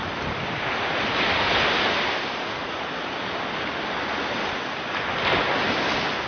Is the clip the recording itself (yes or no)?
yes